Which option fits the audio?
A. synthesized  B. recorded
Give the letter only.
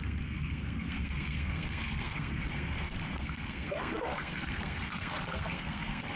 A